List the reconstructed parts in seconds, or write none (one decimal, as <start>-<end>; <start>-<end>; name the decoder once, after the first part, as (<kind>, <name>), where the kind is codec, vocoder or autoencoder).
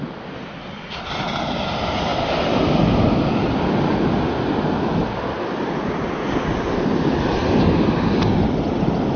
none